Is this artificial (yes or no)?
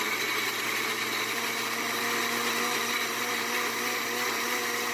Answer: no